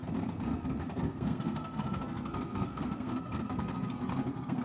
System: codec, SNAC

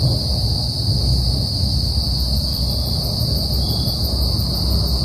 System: none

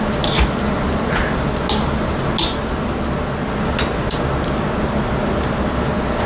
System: none